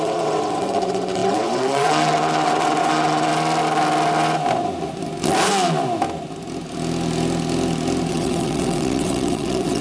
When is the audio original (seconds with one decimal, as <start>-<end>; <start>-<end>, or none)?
3.3-8.1